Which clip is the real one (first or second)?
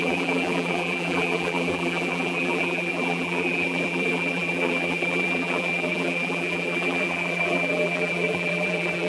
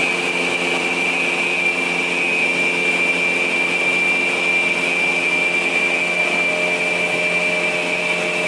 second